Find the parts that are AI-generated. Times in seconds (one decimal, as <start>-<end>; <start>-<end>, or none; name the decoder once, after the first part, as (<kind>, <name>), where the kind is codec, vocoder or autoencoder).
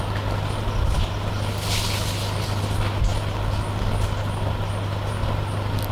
none